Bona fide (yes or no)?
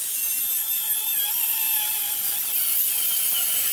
yes